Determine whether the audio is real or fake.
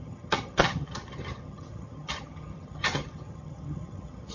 fake